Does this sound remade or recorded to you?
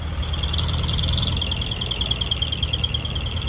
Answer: recorded